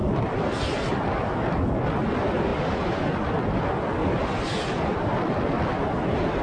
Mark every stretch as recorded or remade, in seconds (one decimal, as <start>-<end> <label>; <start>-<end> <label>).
0.0-6.4 recorded